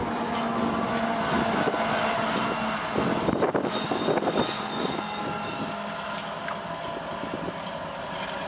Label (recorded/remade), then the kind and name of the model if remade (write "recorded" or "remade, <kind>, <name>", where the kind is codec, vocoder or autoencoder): recorded